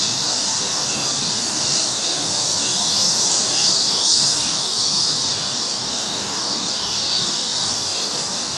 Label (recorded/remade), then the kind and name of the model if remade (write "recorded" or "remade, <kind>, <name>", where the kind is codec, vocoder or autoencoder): remade, codec, DAC